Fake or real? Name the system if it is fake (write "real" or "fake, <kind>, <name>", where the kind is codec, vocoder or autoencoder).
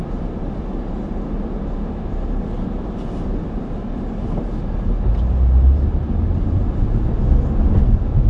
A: real